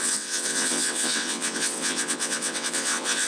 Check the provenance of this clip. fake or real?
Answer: fake